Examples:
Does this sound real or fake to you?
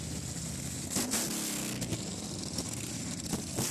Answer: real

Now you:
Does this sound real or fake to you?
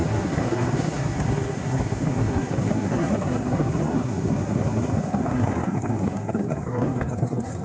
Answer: fake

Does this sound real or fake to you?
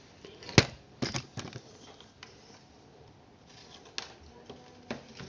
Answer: real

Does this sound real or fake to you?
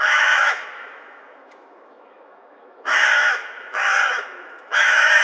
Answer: fake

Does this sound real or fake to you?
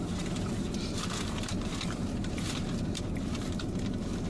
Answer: fake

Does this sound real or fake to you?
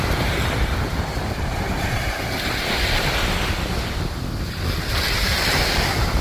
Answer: real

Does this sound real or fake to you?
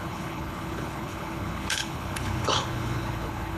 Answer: fake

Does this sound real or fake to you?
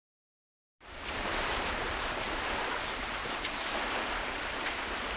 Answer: fake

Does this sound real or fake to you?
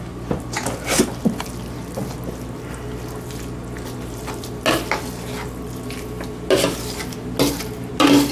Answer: real